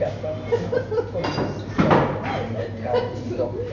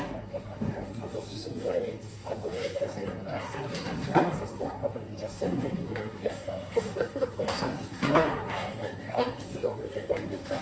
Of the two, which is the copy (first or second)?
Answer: second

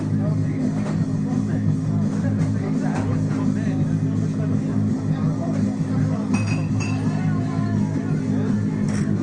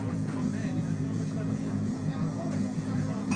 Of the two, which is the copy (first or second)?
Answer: second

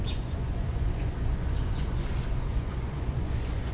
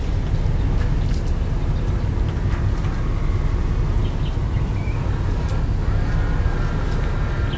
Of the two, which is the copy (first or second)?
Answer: first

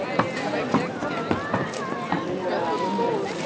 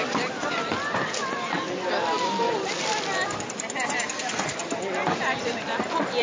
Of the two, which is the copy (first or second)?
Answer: second